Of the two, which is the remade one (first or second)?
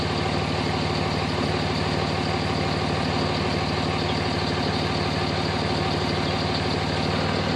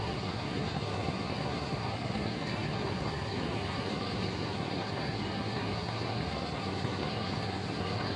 second